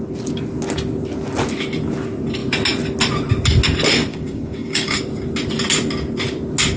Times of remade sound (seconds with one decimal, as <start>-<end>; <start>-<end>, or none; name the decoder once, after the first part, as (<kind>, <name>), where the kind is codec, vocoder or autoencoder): 4.1-5.0 (codec, DAC)